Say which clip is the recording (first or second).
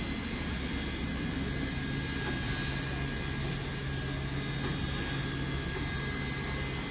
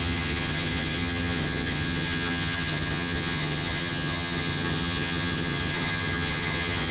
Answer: first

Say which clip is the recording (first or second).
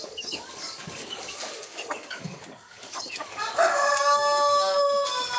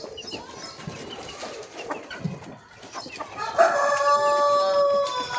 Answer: second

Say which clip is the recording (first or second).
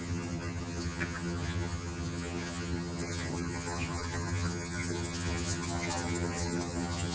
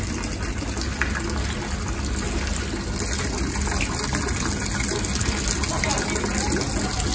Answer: second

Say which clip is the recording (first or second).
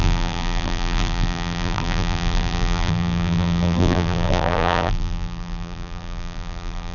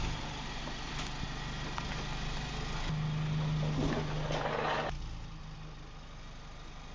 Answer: second